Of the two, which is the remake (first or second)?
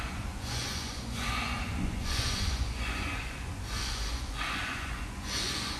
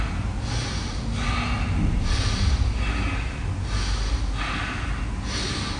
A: first